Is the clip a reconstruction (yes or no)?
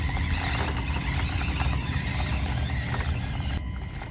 no